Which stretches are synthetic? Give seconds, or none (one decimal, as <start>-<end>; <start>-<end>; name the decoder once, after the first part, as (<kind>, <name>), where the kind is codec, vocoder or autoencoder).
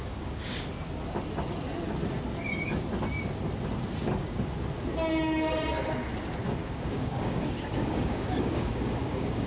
0.0-0.7 (codec, DAC); 6.6-9.5